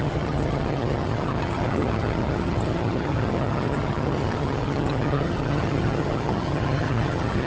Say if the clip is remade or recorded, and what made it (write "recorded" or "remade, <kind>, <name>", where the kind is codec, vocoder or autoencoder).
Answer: remade, vocoder, HiFi-GAN